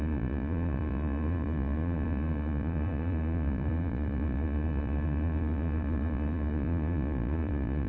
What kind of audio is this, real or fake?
fake